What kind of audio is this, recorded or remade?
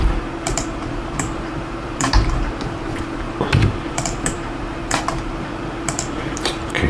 remade